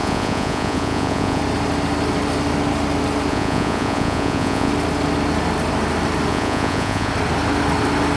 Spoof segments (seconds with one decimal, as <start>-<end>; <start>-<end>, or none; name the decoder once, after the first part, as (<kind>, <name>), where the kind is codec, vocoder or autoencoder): 0.0-1.4 (vocoder, Vocos); 3.3-4.7; 6.3-7.1